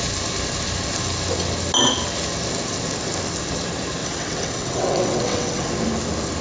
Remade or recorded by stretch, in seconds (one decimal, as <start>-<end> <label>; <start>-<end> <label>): 0.0-4.0 recorded; 4.0-5.7 remade; 5.7-6.4 recorded